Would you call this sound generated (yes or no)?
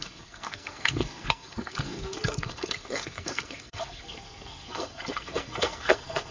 yes